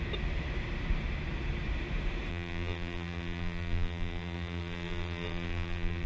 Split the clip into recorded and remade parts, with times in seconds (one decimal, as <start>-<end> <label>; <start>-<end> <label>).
0.0-2.3 recorded; 2.3-6.1 remade